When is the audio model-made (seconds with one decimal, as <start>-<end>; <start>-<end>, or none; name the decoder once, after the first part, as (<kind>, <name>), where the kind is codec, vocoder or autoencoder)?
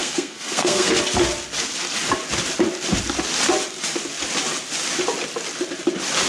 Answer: 0.0-1.0 (codec, SNAC)